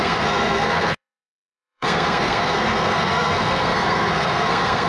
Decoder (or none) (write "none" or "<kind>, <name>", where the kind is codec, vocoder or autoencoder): codec, SNAC